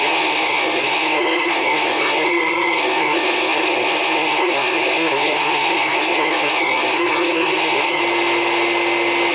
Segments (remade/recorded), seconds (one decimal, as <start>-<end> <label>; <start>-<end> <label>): 0.0-8.0 remade; 8.0-9.3 recorded